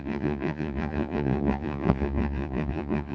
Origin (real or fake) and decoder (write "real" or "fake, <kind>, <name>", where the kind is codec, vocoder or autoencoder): fake, vocoder, Vocos